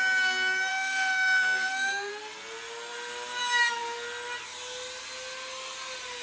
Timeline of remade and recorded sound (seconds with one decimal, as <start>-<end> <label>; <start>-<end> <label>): 0.0-0.7 recorded; 0.7-2.1 remade; 2.1-6.2 recorded